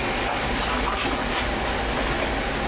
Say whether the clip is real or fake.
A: real